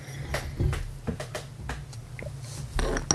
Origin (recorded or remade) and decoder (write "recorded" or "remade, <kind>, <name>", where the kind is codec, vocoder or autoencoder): recorded